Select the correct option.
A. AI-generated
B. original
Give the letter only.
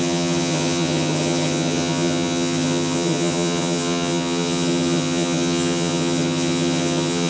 A